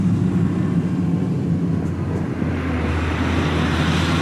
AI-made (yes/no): no